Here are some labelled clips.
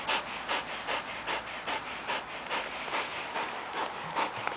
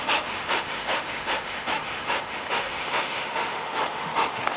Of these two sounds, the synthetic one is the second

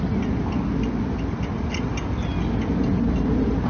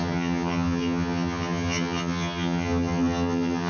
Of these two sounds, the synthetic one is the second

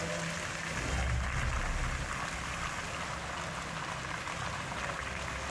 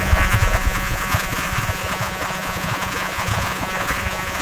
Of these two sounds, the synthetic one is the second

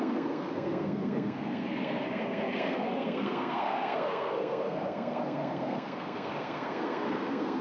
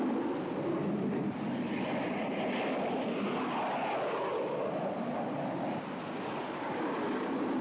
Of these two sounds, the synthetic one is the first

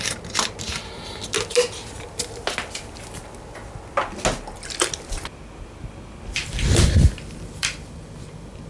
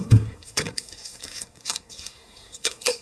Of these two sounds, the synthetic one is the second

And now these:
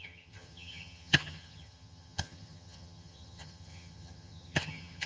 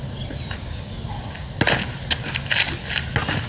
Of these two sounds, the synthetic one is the first